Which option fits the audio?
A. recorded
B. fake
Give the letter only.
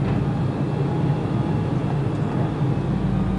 A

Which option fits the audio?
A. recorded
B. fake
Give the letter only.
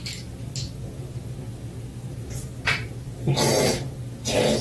A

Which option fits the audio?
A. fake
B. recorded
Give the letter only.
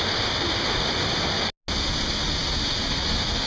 B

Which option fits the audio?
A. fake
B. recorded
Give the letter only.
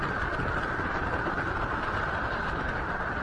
B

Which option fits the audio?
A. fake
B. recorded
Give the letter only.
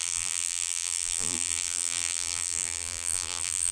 A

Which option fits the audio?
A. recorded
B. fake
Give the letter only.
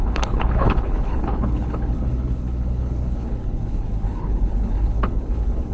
B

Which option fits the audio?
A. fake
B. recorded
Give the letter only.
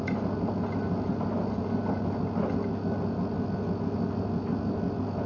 B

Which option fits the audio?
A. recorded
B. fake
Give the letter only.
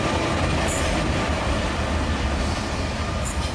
A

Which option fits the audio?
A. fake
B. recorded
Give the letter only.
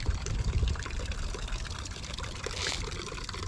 A